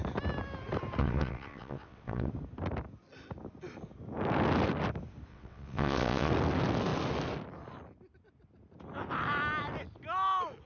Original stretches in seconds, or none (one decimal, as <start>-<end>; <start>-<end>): 0.0-1.0; 2.3-5.3; 6.3-10.7